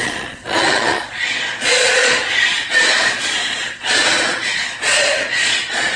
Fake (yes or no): yes